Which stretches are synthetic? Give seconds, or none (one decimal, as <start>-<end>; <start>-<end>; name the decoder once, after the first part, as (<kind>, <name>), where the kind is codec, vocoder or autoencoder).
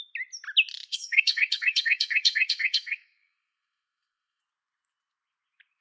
0.9-4.4 (codec, SNAC)